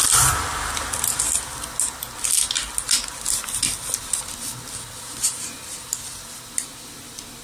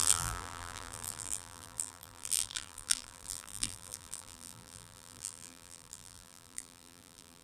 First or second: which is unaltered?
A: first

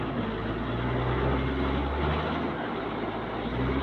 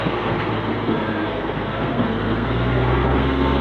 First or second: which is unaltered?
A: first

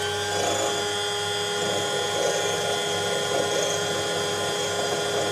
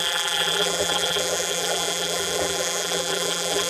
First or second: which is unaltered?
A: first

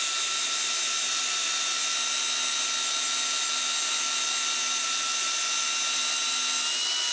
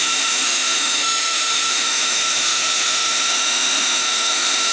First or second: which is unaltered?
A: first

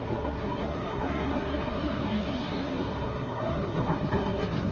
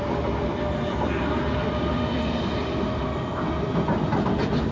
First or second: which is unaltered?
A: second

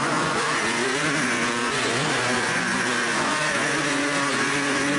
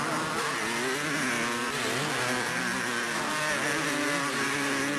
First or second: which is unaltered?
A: second